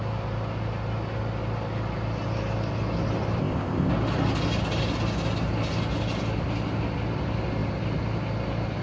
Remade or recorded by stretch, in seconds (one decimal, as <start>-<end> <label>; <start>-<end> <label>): 0.0-3.4 recorded; 3.4-3.9 remade; 3.9-8.8 recorded